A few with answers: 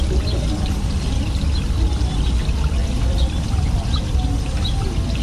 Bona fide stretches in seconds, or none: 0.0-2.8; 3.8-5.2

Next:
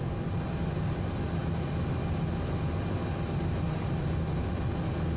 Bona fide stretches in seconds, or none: 0.0-5.2

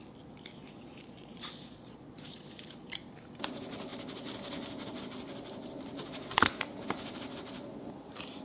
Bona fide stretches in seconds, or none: 0.0-0.5; 2.8-6.0; 6.6-8.4

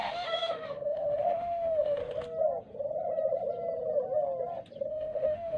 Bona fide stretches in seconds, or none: 2.0-4.9

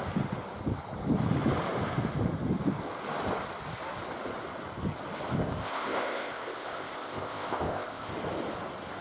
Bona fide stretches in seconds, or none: 0.0-5.4; 8.1-9.0

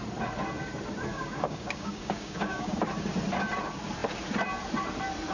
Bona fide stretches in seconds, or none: 0.0-1.1; 2.8-5.3

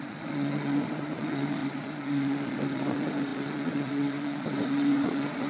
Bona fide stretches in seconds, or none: none